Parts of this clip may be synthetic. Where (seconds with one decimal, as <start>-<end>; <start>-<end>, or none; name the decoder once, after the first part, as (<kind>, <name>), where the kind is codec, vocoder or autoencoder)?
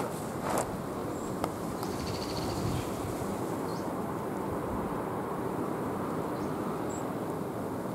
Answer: 1.0-2.4 (vocoder, BigVGAN v2); 3.7-5.7